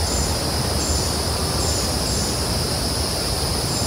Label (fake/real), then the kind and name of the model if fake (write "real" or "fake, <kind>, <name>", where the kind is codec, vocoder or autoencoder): real